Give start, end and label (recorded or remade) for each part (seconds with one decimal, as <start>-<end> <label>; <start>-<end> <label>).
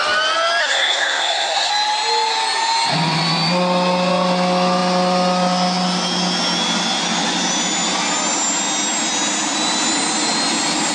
0.0-0.6 recorded; 0.6-1.7 remade; 1.7-10.9 recorded